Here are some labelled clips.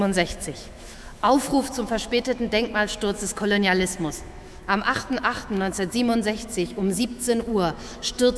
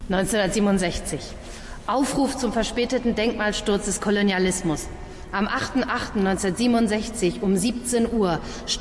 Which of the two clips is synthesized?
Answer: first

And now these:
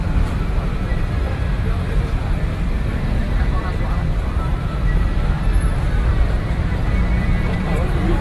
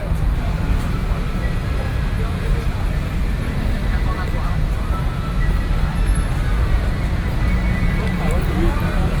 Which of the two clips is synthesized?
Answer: first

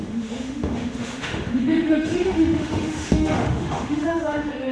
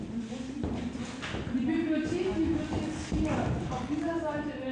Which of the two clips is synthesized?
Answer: first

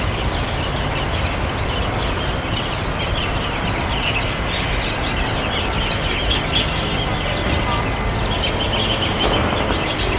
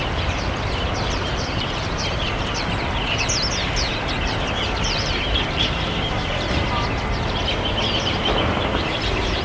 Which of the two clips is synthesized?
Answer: second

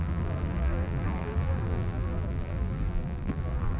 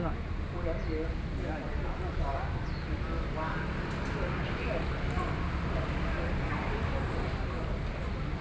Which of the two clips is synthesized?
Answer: first